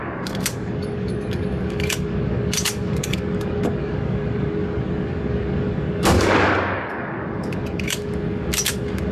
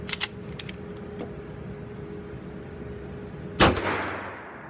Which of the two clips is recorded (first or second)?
second